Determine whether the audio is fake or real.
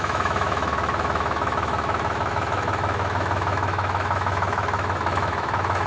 fake